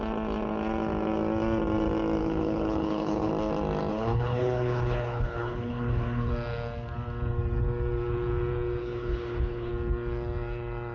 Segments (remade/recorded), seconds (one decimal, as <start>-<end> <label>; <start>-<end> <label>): 0.0-2.2 recorded; 2.2-3.3 remade; 3.3-3.9 recorded; 3.9-6.3 remade; 6.3-8.8 recorded; 8.8-9.7 remade; 9.7-10.9 recorded